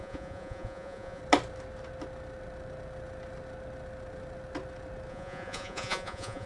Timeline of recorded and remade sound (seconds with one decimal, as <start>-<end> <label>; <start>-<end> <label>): 0.0-1.2 remade; 1.2-5.1 recorded; 5.1-6.5 remade